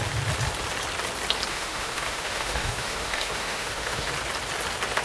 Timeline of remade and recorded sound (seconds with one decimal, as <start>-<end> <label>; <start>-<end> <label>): 0.0-1.5 recorded; 1.5-4.1 remade; 4.1-5.0 recorded